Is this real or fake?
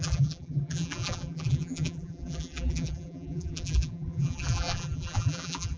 fake